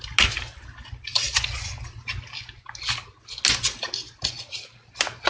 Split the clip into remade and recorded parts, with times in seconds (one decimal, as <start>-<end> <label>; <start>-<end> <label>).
0.0-5.3 recorded